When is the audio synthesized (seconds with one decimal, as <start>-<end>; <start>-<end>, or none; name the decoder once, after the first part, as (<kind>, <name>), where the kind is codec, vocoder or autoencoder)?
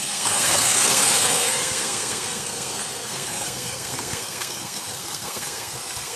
0.0-6.2 (codec, SNAC)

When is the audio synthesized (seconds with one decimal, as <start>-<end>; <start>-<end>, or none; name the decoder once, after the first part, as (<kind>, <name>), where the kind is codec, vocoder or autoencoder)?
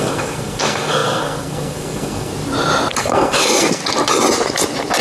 0.0-2.3 (codec, SNAC); 3.0-3.8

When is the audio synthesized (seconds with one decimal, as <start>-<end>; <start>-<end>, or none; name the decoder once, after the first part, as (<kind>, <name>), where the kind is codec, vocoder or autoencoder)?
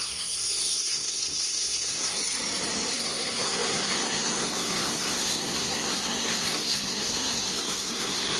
0.0-2.2 (codec, SNAC); 2.9-8.4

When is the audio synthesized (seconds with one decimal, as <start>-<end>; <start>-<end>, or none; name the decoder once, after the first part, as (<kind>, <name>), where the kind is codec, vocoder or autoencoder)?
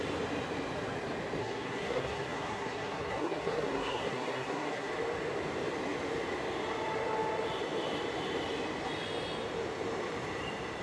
1.4-4.9 (codec, SNAC)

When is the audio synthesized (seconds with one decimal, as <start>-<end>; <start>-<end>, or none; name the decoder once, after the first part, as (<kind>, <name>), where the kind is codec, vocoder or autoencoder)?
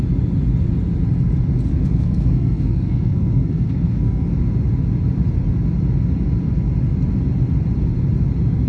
1.7-4.3 (codec, SNAC)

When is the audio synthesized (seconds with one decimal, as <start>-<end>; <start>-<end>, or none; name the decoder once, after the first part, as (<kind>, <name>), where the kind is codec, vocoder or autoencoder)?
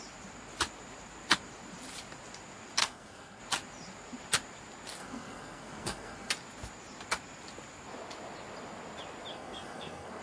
2.8-3.4 (codec, SNAC); 5.0-6.3; 9.3-10.2